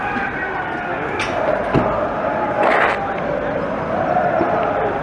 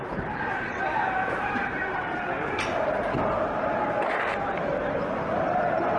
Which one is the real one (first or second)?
first